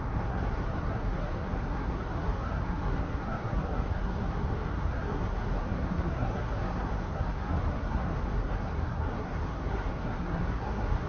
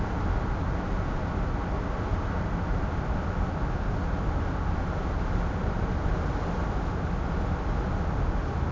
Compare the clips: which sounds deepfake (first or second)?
first